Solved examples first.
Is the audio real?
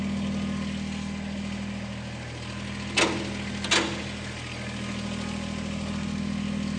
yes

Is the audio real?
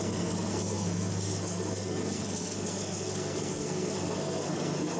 no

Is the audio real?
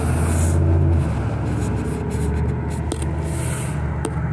yes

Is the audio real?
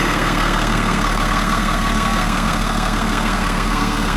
no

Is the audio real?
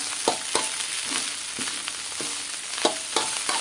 yes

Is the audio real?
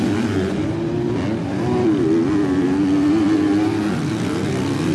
yes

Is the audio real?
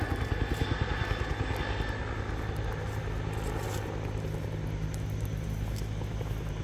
yes